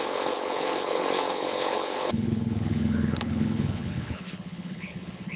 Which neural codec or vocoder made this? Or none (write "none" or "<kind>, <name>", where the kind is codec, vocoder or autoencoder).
codec, HILCodec